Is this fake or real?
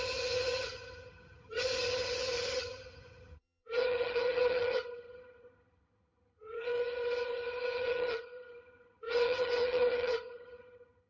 fake